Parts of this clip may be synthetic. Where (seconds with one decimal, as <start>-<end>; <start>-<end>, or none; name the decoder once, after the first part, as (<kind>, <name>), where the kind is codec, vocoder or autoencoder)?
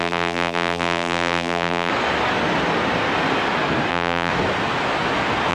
0.0-1.9 (vocoder, BigVGAN v2); 3.9-4.3